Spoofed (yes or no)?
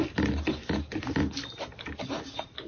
no